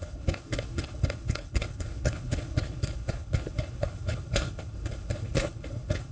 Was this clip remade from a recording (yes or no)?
yes